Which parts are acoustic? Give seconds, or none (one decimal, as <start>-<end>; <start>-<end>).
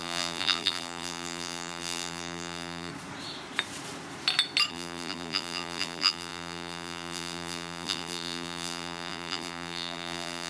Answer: 2.9-4.7